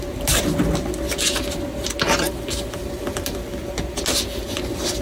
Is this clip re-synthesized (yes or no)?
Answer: no